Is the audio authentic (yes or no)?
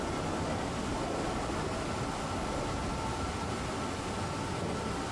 yes